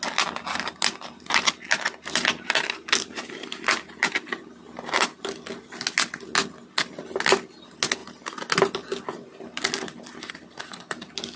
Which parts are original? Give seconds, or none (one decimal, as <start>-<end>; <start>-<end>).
0.0-11.4